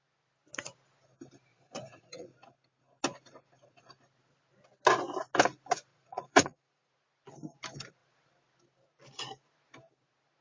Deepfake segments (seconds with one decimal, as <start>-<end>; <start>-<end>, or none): 1.5-2.3; 5.9-6.9